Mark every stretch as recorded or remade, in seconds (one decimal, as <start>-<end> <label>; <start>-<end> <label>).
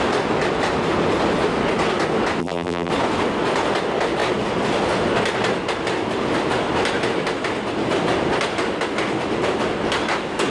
0.0-2.4 recorded; 2.4-2.9 remade; 2.9-10.5 recorded